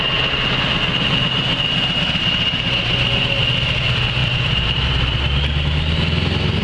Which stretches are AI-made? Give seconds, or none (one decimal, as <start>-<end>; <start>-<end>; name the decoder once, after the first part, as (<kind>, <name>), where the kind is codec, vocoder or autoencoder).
1.5-3.4 (vocoder, BigVGAN v2); 4.2-5.4